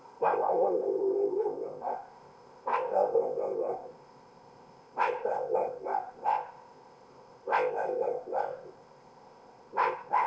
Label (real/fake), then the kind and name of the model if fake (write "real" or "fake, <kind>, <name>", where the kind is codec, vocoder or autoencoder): fake, codec, ZipCodec